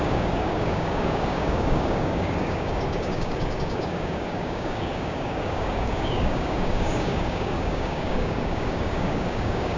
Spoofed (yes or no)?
yes